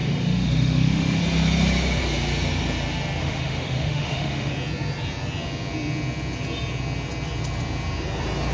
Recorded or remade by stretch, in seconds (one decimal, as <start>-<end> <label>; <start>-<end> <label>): 0.0-1.2 remade; 1.2-3.2 recorded; 3.2-4.5 remade; 4.5-8.5 recorded